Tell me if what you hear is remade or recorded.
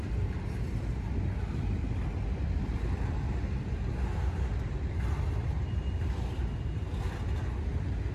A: recorded